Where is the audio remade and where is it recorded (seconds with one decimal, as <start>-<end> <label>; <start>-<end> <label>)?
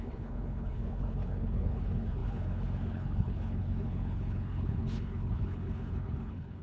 0.0-6.6 remade